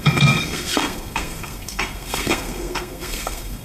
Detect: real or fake fake